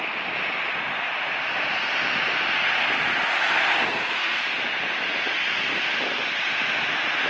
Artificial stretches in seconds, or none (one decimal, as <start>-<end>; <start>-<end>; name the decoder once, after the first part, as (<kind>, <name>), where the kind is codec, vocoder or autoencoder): 3.6-4.4 (codec, SNAC)